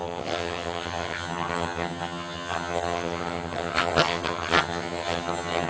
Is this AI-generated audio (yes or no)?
yes